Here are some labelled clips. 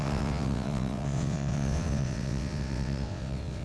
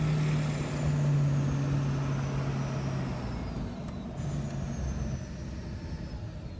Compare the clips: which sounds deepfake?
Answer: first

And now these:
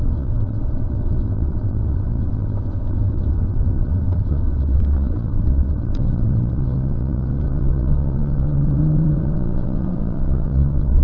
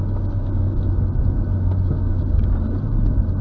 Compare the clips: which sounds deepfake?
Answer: first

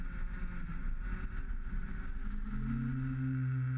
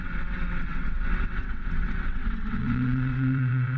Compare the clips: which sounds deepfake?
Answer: second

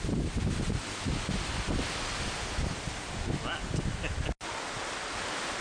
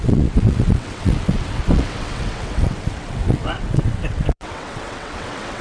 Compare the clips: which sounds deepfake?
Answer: second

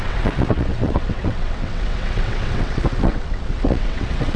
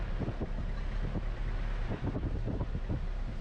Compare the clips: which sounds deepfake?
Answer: first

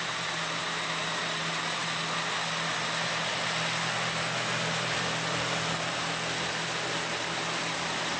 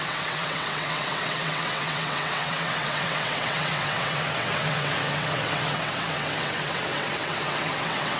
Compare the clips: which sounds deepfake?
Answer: second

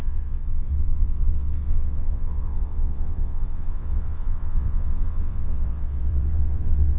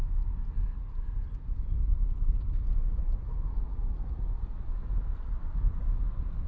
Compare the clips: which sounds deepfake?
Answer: first